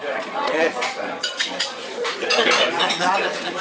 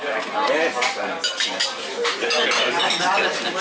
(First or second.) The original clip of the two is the second